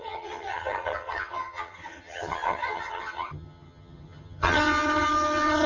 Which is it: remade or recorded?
remade